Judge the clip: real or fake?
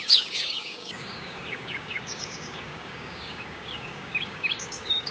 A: fake